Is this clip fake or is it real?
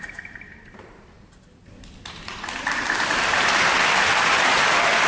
real